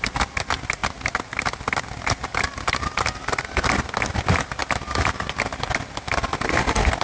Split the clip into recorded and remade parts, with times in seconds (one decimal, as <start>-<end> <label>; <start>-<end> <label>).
0.0-7.0 recorded